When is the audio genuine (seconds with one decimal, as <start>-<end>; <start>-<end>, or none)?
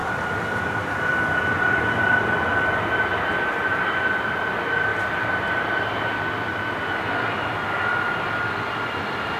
0.0-9.4